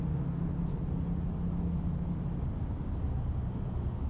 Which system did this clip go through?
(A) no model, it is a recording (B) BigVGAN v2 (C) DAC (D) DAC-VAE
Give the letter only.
A